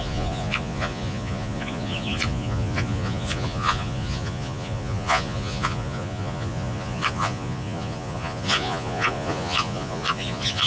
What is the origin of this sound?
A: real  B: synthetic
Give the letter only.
B